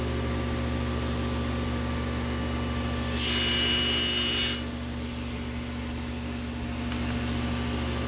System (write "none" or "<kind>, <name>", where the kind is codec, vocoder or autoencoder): none